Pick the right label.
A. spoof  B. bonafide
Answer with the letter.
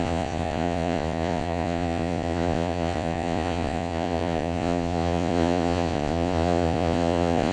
A